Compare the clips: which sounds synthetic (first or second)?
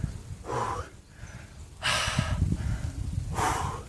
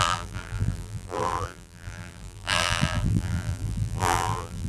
second